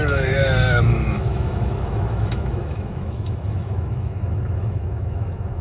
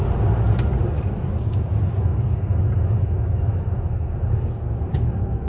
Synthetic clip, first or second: first